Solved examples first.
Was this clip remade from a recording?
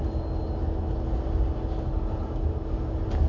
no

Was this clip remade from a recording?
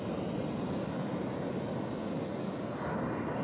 no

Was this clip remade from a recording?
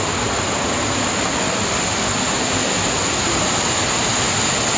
no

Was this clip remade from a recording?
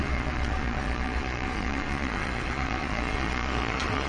yes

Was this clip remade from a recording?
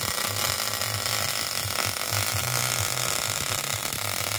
no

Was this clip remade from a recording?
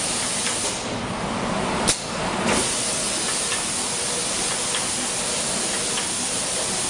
no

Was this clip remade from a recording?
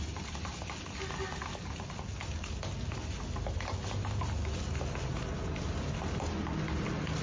no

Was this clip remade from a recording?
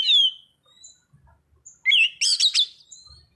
no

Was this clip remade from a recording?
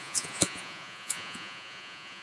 yes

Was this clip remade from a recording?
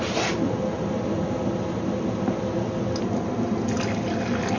no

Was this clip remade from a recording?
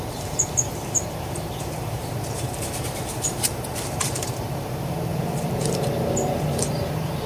yes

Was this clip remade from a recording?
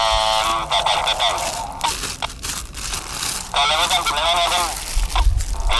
no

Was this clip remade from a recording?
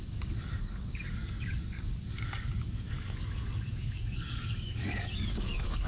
yes